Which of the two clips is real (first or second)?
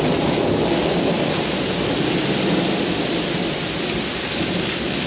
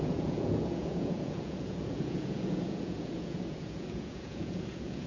first